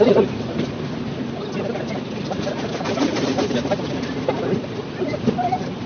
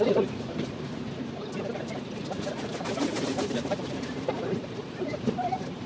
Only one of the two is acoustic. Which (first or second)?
first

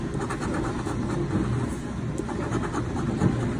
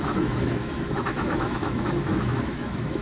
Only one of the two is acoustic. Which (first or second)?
first